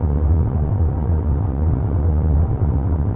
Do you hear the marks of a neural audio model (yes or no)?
yes